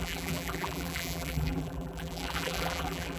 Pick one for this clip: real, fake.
fake